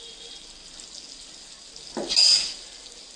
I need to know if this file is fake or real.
real